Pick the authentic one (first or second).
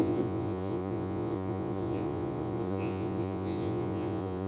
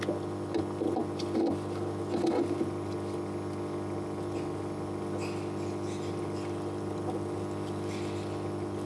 second